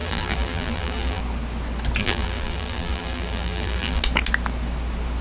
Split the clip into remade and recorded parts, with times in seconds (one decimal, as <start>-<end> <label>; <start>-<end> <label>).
0.0-1.2 remade; 1.2-2.0 recorded; 2.0-4.0 remade; 4.0-5.2 recorded